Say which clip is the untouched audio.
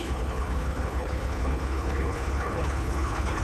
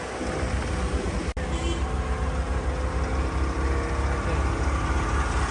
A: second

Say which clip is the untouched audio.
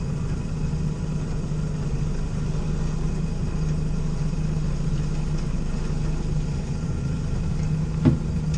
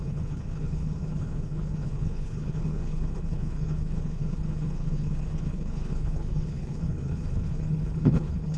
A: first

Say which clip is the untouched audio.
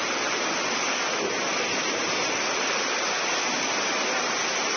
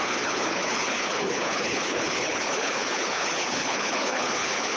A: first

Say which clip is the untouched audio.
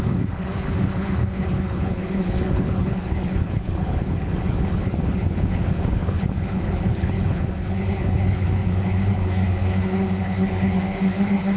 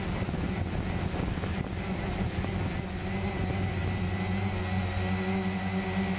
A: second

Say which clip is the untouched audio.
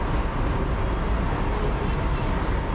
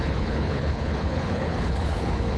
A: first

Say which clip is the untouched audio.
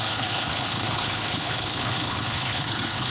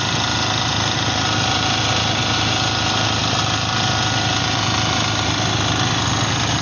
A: second